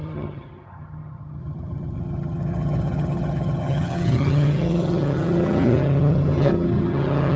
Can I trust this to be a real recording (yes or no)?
no